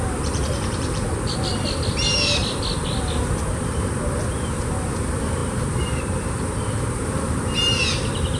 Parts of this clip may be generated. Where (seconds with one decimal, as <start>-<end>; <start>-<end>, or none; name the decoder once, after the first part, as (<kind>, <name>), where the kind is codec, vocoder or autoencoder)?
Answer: 0.0-1.5 (vocoder, BigVGAN v2); 3.6-8.4